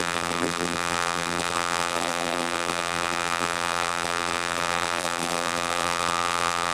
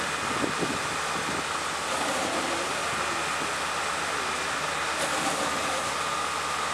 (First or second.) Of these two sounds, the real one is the second